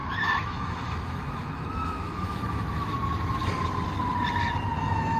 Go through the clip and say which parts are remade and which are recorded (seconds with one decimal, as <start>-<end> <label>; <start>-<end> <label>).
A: 0.0-3.4 remade; 3.4-4.8 recorded; 4.8-5.2 remade